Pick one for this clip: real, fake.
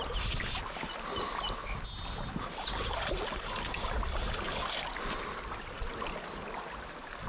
real